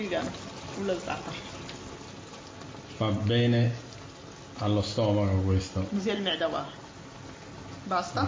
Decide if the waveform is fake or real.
real